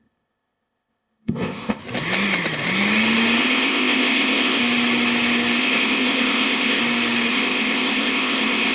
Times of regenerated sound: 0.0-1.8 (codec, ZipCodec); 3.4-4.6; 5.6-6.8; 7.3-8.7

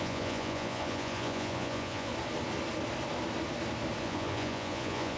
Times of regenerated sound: 0.0-2.1 (vocoder, Vocos); 4.0-5.2

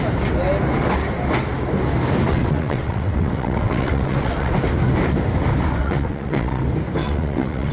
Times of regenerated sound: 2.3-4.5 (vocoder, WaveNeXt); 5.8-6.6; 7.0-7.7

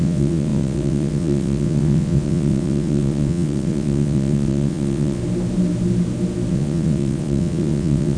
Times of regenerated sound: 0.0-5.2 (vocoder, WaveNeXt); 6.5-8.2

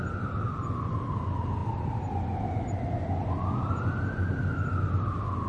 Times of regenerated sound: none

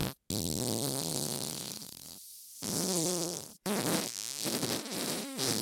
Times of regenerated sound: 1.1-5.6 (vocoder, BigVGAN v2)